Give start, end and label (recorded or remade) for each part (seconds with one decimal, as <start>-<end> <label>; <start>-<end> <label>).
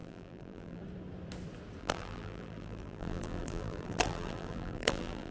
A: 0.0-0.8 remade; 0.8-1.8 recorded; 1.8-5.3 remade